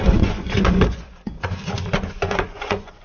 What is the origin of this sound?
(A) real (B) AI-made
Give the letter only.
B